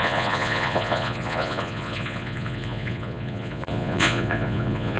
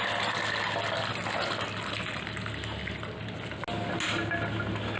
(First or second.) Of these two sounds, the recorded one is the second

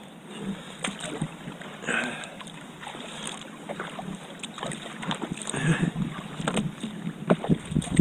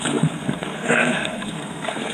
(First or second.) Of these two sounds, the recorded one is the first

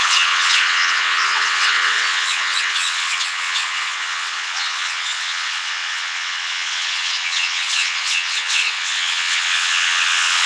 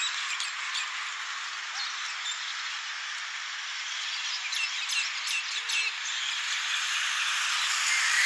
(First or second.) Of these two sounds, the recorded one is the second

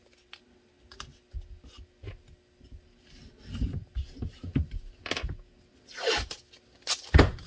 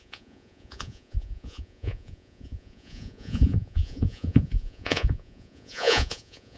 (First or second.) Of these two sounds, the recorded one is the first